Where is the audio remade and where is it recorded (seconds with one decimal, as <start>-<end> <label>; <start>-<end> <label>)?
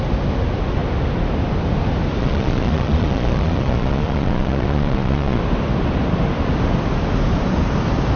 0.0-2.2 recorded; 2.2-5.4 remade; 5.4-8.2 recorded